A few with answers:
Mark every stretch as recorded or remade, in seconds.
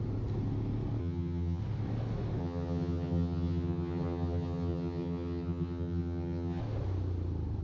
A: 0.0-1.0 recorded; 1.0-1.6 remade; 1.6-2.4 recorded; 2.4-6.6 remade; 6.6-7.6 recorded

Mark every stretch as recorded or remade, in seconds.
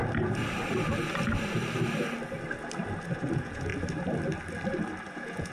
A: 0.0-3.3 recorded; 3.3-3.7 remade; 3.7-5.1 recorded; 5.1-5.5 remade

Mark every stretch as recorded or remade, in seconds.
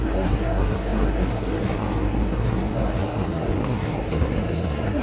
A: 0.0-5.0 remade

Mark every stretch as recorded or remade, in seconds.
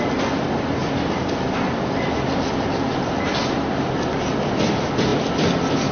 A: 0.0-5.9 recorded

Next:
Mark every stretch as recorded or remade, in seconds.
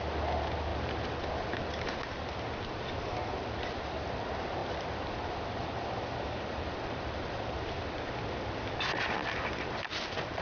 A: 0.0-0.7 recorded; 0.7-4.1 remade; 4.1-4.6 recorded; 4.6-8.9 remade; 8.9-10.4 recorded